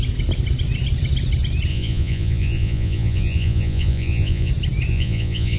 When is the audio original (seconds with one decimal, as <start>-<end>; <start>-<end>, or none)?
0.0-1.7; 4.5-4.9